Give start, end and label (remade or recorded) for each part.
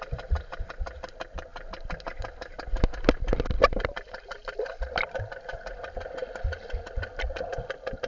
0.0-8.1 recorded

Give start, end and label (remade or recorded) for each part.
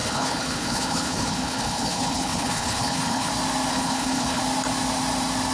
0.0-3.3 remade; 3.3-3.7 recorded; 3.7-4.4 remade; 4.4-5.5 recorded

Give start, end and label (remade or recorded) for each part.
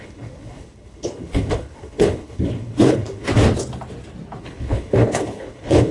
0.0-3.3 remade; 3.3-4.4 recorded; 4.4-5.9 remade